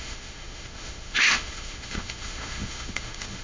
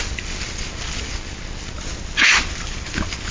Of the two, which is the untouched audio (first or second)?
second